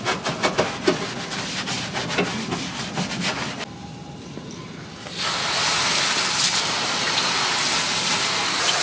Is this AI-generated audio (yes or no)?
no